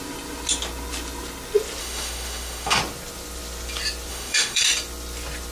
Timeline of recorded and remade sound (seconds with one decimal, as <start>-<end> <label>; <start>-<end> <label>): 0.0-1.8 recorded; 1.8-2.8 remade; 2.8-4.1 recorded; 4.1-4.6 remade; 4.6-5.5 recorded